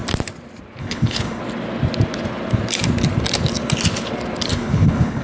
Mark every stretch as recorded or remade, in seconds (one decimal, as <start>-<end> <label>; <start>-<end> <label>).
0.0-0.8 recorded; 0.8-1.4 remade; 1.4-4.5 recorded; 4.5-5.2 remade